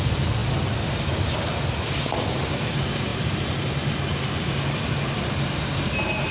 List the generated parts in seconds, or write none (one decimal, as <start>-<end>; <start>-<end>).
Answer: none